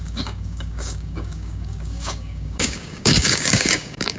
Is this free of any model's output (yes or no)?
no